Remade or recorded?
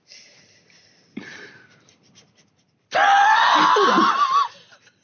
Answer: recorded